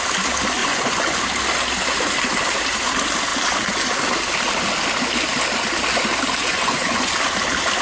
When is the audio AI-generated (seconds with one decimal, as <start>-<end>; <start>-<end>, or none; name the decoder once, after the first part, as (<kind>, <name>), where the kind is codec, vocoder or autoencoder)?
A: 0.6-1.2 (vocoder, Vocos); 6.4-7.1